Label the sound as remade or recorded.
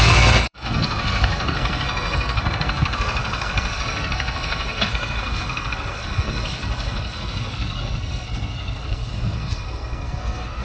remade